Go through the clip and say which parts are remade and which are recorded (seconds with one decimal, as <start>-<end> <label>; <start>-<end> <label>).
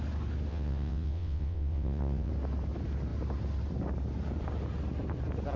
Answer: 0.0-0.5 recorded; 0.5-2.3 remade; 2.3-5.6 recorded